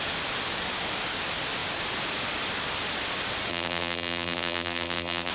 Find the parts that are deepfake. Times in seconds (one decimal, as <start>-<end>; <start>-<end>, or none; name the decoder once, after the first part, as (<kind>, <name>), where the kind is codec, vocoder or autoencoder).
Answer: 3.5-5.3 (vocoder, BigVGAN v2)

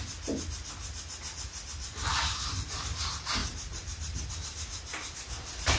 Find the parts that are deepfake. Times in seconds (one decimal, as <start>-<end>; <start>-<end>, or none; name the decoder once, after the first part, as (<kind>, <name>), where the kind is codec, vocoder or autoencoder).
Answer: 3.4-4.3 (vocoder, BigVGAN v2)

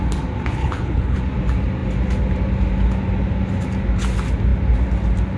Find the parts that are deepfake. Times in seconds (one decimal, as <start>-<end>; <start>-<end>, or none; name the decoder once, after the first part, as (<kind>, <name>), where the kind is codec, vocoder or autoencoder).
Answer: 0.6-1.2 (codec, HILCodec)

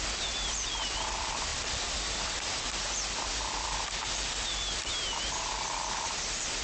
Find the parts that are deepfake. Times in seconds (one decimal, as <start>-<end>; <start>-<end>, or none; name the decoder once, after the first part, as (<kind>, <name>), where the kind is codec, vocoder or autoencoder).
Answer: 0.0-4.9 (vocoder, BigVGAN v2); 5.5-6.6